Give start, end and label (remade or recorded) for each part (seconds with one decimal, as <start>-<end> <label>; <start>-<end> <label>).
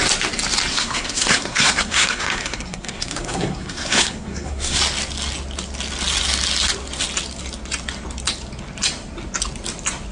0.0-0.7 recorded; 0.7-4.8 remade; 4.8-10.1 recorded